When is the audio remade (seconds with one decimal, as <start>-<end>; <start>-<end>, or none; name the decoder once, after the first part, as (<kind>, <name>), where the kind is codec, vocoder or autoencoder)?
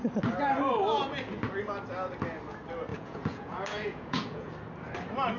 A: 2.9-4.5 (vocoder, Vocos)